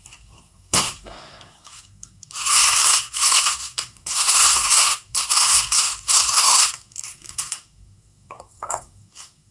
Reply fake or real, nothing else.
fake